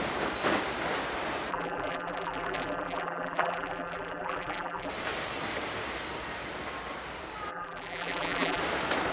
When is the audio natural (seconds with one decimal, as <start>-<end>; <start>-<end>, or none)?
0.0-1.5; 4.9-7.5; 8.6-9.1

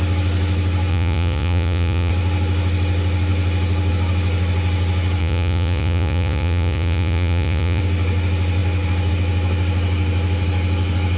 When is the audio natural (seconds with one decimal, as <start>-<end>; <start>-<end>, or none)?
0.0-0.9; 2.1-5.2; 7.8-11.2